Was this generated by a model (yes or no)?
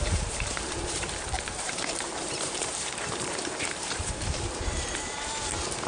yes